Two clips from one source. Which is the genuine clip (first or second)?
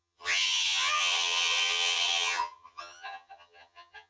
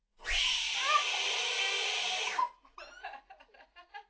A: second